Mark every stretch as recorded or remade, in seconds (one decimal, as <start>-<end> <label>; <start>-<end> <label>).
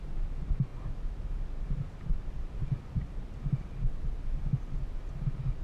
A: 0.0-5.6 recorded